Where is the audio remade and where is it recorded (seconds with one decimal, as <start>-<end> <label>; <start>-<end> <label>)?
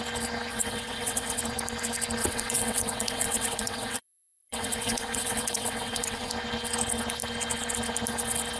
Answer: 0.0-0.5 recorded; 0.5-1.4 remade; 1.4-2.2 recorded; 2.2-6.3 remade; 6.3-8.6 recorded